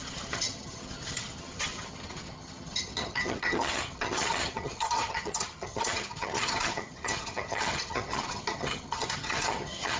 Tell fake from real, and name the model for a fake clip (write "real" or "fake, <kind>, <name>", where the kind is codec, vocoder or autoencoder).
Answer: fake, vocoder, HiFi-GAN